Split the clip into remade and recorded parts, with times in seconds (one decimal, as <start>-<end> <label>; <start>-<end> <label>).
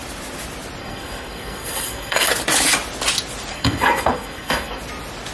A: 0.0-0.8 recorded; 0.8-2.3 remade; 2.3-3.5 recorded; 3.5-4.8 remade; 4.8-5.3 recorded